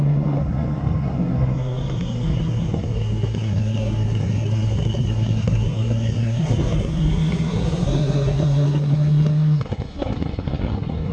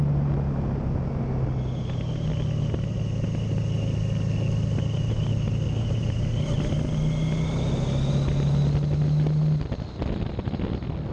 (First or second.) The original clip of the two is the second